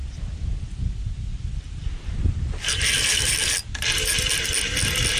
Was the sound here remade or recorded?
recorded